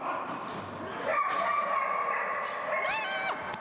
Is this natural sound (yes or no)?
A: yes